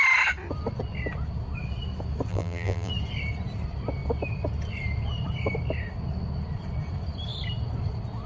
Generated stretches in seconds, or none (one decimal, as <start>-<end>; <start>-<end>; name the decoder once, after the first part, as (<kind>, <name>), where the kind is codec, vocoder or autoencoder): 2.3-2.9 (vocoder, BigVGAN v2)

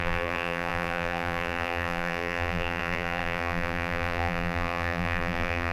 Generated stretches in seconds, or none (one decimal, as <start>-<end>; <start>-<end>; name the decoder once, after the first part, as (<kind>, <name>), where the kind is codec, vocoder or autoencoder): 0.0-5.7 (vocoder, BigVGAN v2)

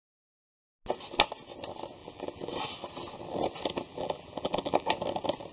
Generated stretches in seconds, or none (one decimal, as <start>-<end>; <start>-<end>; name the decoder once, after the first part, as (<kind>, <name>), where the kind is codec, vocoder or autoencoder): 2.0-2.5 (vocoder, BigVGAN v2); 3.9-4.9

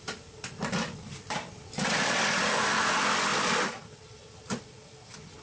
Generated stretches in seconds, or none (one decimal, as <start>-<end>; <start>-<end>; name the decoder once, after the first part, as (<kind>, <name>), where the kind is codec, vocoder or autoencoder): none

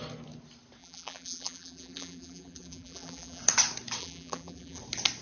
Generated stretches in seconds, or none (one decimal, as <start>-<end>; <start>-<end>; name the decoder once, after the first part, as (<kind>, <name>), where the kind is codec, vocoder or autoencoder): 0.8-3.4 (vocoder, BigVGAN v2); 4.0-4.8

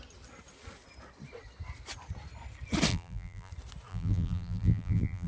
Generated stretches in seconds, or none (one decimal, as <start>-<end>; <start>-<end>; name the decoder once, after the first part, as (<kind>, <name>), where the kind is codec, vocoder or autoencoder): 2.9-3.5 (vocoder, BigVGAN v2); 3.9-5.3